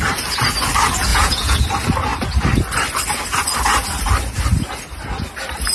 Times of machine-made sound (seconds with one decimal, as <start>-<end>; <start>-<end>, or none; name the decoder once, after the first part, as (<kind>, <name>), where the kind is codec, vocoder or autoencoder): 1.1-1.6 (vocoder, Vocos)